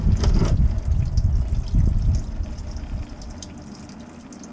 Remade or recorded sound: recorded